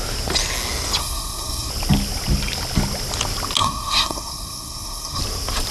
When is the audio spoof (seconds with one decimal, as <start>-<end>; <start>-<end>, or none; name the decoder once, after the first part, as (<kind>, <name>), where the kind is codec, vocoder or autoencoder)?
1.0-1.7 (codec, SNAC); 3.6-5.2